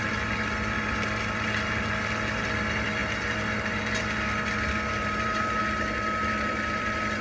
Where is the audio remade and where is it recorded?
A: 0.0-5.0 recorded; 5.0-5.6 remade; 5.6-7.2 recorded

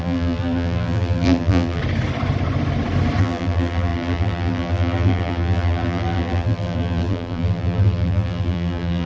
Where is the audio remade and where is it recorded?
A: 0.0-1.8 remade; 1.8-3.2 recorded; 3.2-9.1 remade

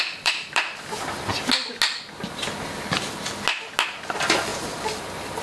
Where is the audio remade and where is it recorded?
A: 0.0-1.3 remade; 1.3-3.9 recorded; 3.9-5.4 remade

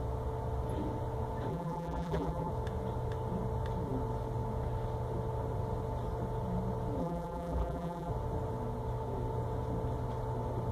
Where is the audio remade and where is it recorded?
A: 0.0-1.5 recorded; 1.5-2.5 remade; 2.5-7.0 recorded; 7.0-8.1 remade; 8.1-10.7 recorded